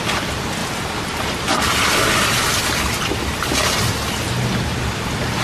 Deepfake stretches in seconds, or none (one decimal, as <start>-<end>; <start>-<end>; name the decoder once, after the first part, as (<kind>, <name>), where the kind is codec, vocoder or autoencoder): none